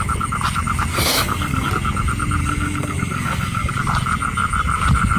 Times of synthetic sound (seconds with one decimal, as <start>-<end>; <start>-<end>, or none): 0.9-1.7; 2.4-3.7